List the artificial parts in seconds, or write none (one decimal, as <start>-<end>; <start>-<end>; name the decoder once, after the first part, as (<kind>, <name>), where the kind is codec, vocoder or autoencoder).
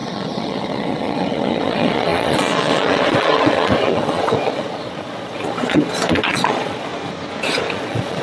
0.0-6.9 (vocoder, Vocos); 7.7-8.2